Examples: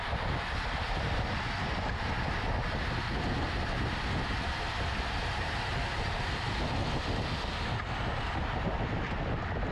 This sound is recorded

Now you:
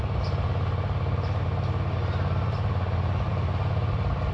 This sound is recorded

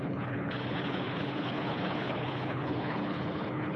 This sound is remade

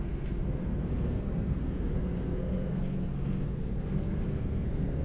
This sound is remade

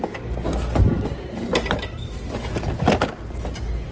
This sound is recorded